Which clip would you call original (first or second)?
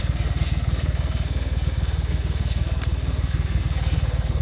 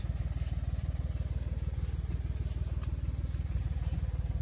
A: second